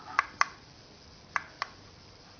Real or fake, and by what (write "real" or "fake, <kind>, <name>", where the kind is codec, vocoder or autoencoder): real